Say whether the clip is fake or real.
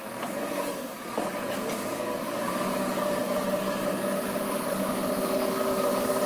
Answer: fake